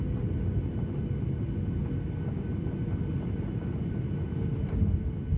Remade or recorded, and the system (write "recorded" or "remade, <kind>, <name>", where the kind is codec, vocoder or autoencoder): recorded